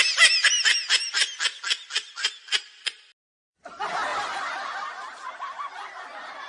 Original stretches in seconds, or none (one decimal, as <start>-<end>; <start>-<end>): 0.0-4.1; 4.7-6.5